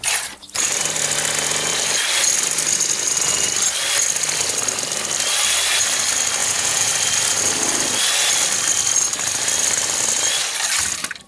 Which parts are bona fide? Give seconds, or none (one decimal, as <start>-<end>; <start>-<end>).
0.0-6.4; 6.9-11.3